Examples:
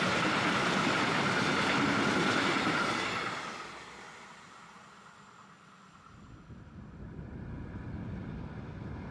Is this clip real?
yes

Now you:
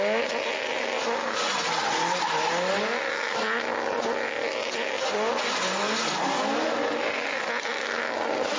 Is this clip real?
yes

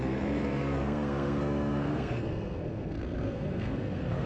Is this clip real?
no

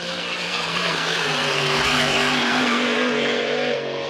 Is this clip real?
no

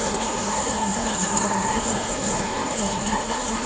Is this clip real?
no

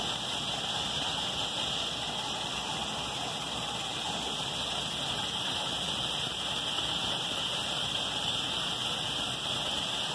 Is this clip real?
yes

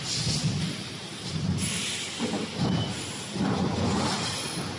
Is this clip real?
yes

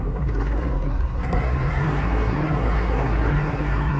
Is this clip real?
no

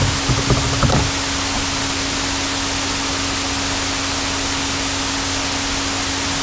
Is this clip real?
yes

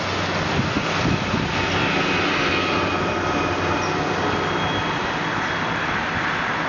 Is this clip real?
yes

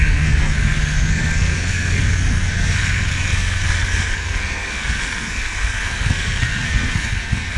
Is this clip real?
no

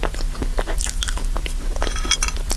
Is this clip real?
yes